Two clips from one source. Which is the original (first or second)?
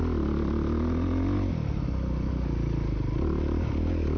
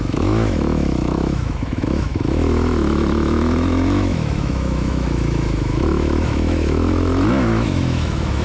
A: first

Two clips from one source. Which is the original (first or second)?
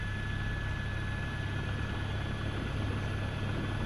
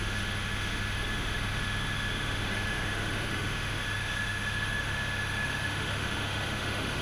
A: first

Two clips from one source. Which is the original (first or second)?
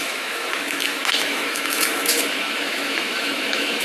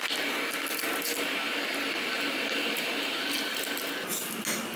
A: second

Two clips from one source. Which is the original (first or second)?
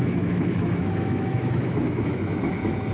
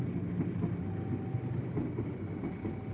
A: second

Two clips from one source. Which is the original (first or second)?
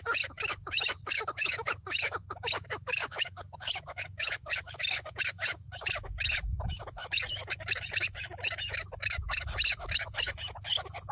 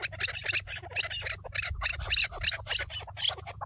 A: second